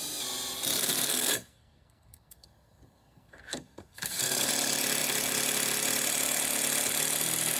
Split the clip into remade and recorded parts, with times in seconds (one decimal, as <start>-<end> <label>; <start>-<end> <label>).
0.0-0.8 recorded; 0.8-4.5 remade; 4.5-7.6 recorded